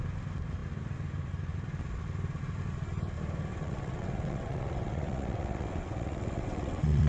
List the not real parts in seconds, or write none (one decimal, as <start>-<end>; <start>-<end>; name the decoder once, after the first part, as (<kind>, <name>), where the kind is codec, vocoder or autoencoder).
3.5-7.1 (vocoder, WaveNeXt)